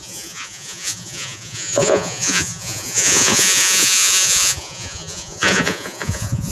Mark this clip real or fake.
fake